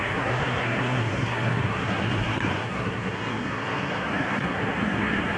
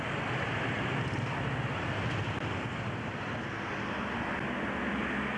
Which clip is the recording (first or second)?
second